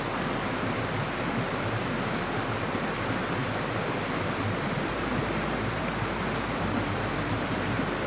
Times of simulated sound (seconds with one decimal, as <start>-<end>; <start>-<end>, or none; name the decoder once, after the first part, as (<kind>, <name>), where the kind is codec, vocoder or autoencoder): none